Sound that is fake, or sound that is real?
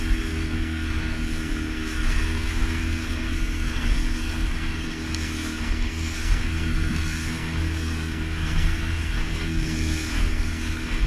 fake